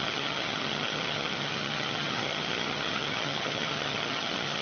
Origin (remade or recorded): remade